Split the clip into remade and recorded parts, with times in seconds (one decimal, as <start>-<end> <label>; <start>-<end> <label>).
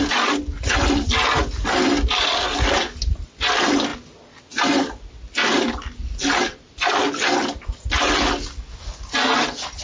0.0-9.8 recorded